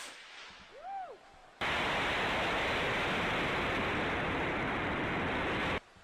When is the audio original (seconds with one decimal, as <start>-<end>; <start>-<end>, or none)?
0.7-6.0